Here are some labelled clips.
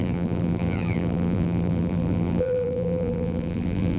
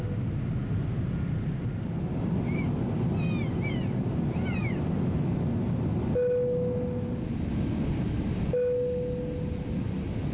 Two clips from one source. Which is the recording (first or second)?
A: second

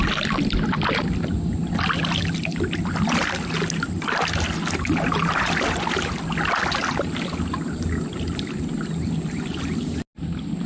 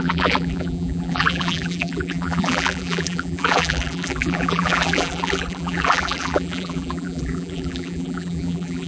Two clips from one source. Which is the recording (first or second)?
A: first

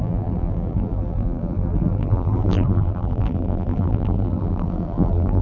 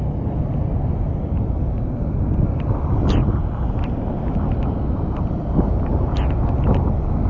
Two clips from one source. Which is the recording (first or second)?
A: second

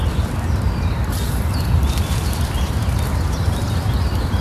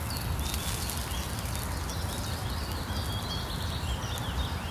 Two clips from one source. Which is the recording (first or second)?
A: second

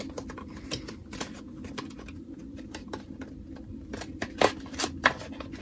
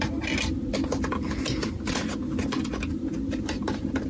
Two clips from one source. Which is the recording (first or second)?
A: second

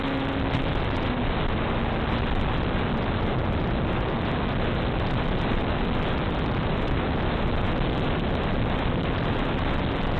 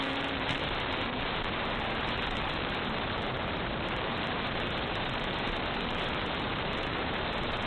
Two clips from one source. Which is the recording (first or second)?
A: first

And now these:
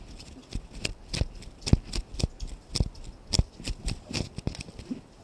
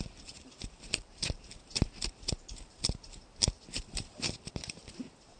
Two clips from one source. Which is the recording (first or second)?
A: first